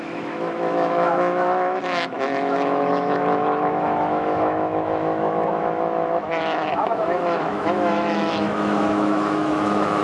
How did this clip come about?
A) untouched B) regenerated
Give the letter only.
B